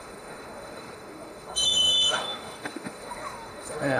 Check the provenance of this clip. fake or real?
fake